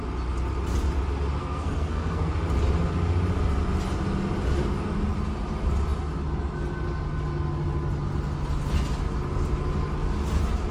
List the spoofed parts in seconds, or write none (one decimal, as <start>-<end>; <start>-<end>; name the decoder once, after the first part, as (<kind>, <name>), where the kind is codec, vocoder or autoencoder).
1.4-2.3 (codec, SNAC)